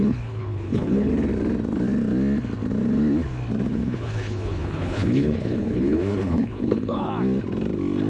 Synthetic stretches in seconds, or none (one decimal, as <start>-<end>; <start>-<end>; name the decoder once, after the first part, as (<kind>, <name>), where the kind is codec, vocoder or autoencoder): 0.0-1.1 (codec, HILCodec); 3.7-7.1